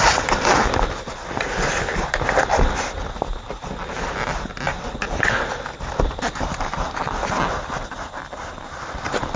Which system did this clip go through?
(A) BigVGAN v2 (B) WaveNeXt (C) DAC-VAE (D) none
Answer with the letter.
D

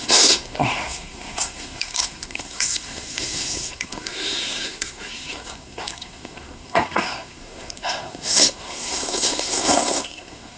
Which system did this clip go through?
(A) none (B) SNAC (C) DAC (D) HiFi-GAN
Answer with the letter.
B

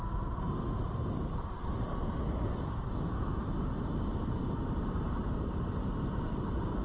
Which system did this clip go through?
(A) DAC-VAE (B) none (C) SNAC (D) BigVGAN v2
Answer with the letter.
D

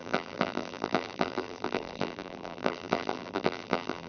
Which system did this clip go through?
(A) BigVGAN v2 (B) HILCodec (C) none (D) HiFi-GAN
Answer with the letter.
A